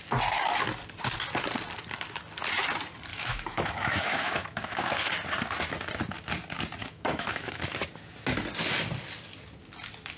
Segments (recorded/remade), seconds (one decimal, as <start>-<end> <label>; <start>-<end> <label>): 0.0-3.1 recorded; 3.1-5.1 remade; 5.1-6.8 recorded; 6.8-7.6 remade; 7.6-10.2 recorded